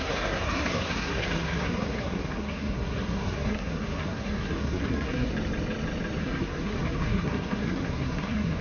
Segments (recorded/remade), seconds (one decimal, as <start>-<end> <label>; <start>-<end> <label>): 0.0-5.3 remade; 5.3-6.2 recorded; 6.2-8.6 remade